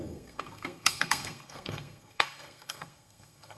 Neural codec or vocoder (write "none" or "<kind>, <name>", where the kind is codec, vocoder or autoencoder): codec, SNAC